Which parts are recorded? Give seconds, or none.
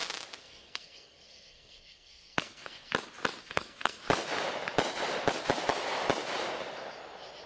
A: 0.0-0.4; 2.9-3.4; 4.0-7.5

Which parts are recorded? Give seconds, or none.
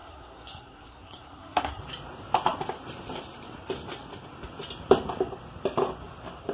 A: 1.8-6.5